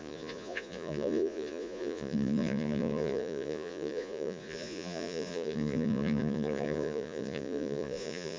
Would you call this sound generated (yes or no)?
yes